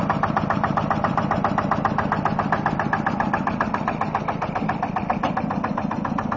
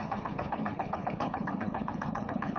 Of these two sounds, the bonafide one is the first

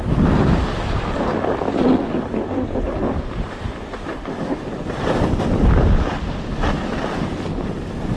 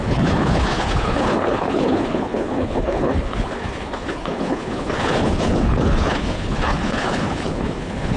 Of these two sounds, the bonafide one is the first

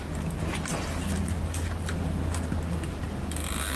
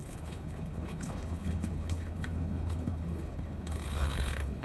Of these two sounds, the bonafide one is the first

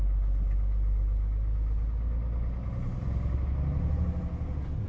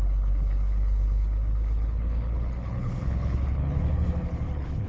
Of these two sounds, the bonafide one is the first